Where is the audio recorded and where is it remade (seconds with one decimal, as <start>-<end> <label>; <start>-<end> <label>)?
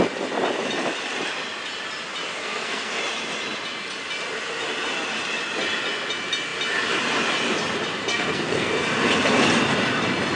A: 0.0-2.4 recorded; 2.4-3.0 remade; 3.0-8.1 recorded; 8.1-8.7 remade; 8.7-10.4 recorded